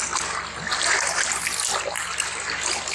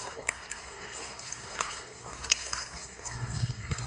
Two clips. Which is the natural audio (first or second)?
first